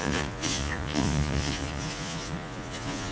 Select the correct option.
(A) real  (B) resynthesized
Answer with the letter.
B